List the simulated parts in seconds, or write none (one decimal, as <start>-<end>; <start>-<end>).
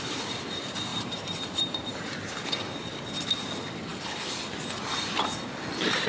0.9-2.3